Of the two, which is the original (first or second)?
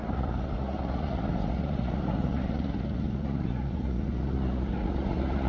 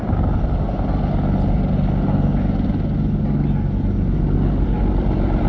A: second